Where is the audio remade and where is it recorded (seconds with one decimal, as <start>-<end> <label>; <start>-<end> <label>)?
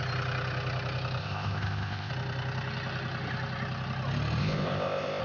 0.0-1.2 recorded; 1.2-2.1 remade; 2.1-4.4 recorded; 4.4-5.2 remade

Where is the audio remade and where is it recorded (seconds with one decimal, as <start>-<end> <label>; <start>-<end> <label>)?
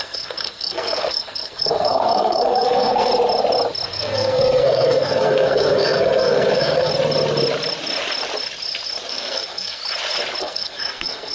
0.0-3.1 remade; 3.1-3.9 recorded; 3.9-6.9 remade; 6.9-9.1 recorded; 9.1-9.8 remade; 9.8-10.4 recorded; 10.4-11.3 remade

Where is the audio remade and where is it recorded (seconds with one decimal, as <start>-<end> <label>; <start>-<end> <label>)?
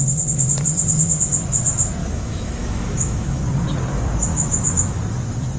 0.0-2.0 recorded; 2.0-3.4 remade; 3.4-4.3 recorded; 4.3-5.0 remade; 5.0-5.6 recorded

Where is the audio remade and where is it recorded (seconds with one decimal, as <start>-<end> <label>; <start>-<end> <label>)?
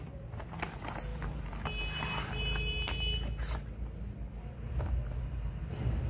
0.0-6.1 recorded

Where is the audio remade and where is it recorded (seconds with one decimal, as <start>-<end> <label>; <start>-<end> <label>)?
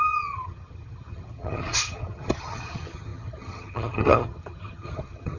0.0-5.4 remade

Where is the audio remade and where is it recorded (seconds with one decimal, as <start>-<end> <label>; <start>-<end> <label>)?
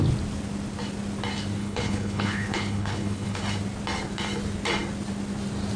0.0-1.6 recorded; 1.6-3.4 remade; 3.4-5.8 recorded